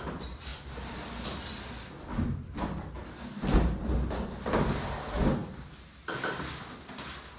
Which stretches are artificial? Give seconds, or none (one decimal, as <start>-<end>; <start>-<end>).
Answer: 0.0-0.5; 4.9-7.4